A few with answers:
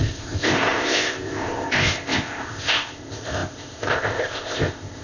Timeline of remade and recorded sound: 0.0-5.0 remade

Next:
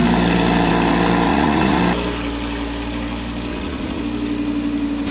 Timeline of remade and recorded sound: 0.0-1.3 recorded; 1.3-1.8 remade; 1.8-3.5 recorded; 3.5-4.0 remade; 4.0-5.1 recorded

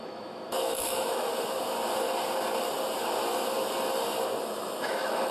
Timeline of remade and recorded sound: 0.0-1.3 remade; 1.3-4.4 recorded; 4.4-5.3 remade

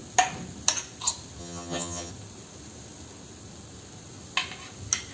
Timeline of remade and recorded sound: 0.0-1.4 recorded; 1.4-2.1 remade; 2.1-5.1 recorded

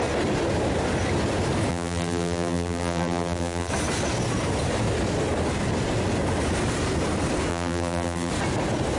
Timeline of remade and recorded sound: 0.0-1.7 recorded; 1.7-3.7 remade; 3.7-7.5 recorded; 7.5-8.3 remade; 8.3-9.0 recorded